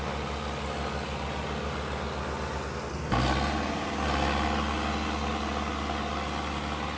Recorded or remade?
recorded